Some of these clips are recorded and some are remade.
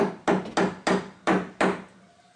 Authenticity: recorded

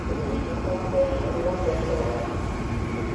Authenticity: remade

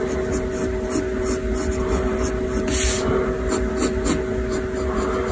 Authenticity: recorded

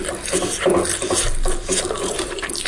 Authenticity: recorded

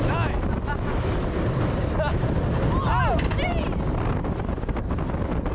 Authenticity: recorded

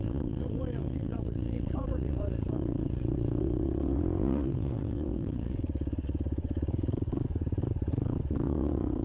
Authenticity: remade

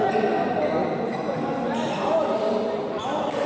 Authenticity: recorded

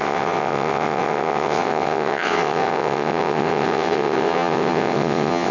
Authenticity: remade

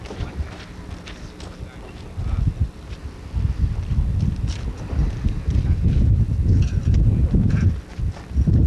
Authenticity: recorded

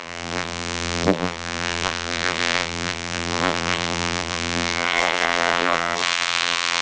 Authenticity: remade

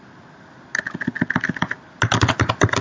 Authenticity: recorded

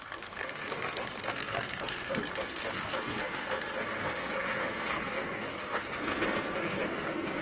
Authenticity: remade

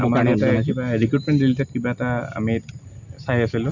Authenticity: recorded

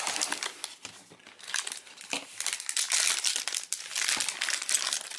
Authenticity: recorded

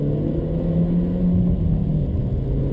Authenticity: recorded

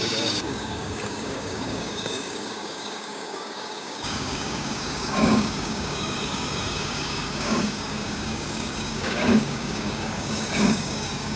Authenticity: remade